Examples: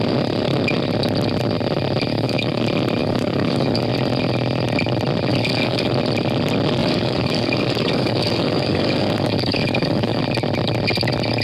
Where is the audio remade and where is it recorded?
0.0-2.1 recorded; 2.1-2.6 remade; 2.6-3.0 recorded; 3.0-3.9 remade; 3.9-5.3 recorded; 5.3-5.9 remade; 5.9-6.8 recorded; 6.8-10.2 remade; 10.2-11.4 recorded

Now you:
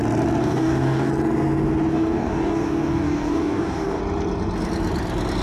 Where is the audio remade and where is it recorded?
0.0-0.4 recorded; 0.4-1.1 remade; 1.1-1.9 recorded; 1.9-4.0 remade; 4.0-5.4 recorded

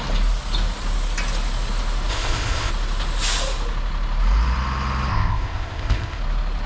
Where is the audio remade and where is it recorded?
0.0-2.1 recorded; 2.1-2.7 remade; 2.7-5.1 recorded; 5.1-6.2 remade; 6.2-6.7 recorded